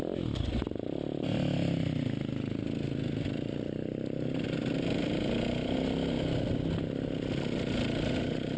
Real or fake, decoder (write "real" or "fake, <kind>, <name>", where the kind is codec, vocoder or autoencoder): real